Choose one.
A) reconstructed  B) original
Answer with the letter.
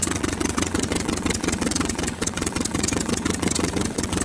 A